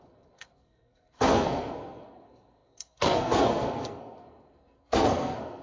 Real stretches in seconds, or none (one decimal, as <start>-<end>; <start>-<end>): none